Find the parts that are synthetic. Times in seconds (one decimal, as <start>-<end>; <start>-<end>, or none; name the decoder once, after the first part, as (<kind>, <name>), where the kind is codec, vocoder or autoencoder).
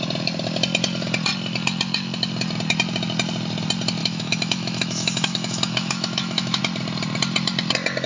4.0-6.6 (autoencoder, DAC-VAE)